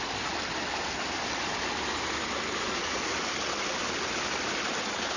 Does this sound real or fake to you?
real